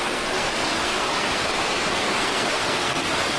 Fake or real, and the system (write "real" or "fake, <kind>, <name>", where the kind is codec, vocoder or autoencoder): fake, codec, SNAC